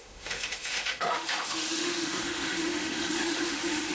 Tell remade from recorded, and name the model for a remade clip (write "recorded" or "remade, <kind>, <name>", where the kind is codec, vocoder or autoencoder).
remade, autoencoder, DAC-VAE